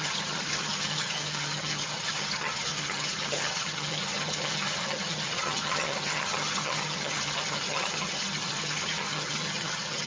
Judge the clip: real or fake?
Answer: fake